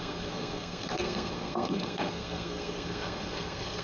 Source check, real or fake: fake